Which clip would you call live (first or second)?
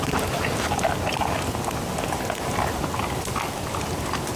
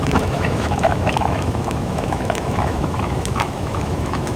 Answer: first